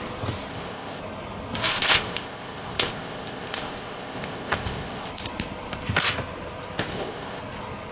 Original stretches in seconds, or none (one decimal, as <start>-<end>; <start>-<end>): 0.0-0.5; 1.0-1.7; 5.1-6.9; 7.4-7.9